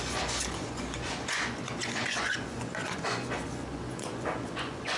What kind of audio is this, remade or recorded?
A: remade